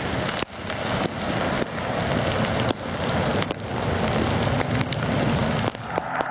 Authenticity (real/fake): real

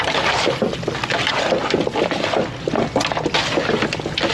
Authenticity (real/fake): real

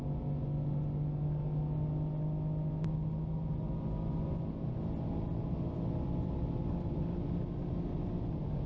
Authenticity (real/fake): real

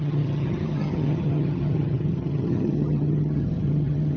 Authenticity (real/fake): fake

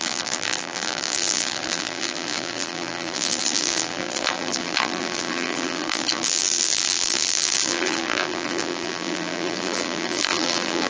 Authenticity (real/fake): fake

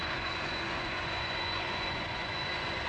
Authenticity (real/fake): fake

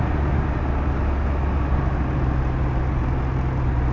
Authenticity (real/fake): real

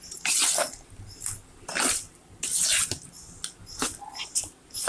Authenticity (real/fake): real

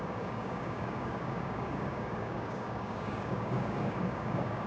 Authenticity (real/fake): fake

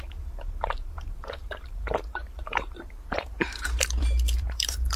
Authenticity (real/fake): fake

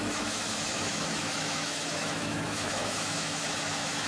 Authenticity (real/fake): fake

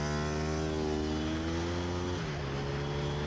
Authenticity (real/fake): real